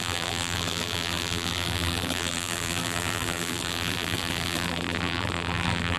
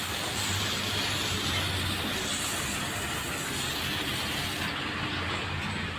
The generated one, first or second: first